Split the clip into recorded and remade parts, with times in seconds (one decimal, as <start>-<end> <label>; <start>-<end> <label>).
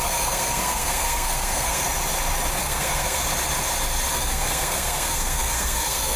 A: 0.0-1.8 remade; 1.8-2.6 recorded; 2.6-3.2 remade; 3.2-4.1 recorded; 4.1-6.2 remade